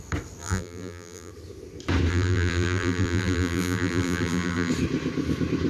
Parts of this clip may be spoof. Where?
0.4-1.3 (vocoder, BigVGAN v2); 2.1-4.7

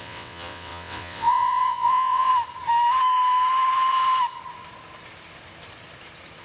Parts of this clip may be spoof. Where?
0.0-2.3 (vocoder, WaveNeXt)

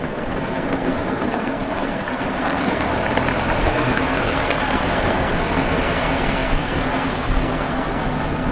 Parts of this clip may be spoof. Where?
0.0-2.9 (codec, SNAC); 3.6-8.5